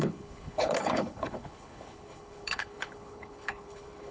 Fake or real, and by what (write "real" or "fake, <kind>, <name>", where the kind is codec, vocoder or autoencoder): fake, codec, HILCodec